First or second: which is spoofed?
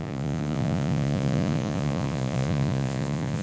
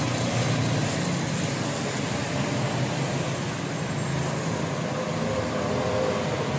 first